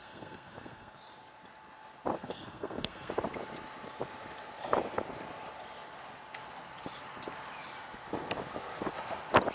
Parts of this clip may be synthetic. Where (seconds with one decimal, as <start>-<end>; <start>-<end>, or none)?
0.0-1.0; 2.2-3.1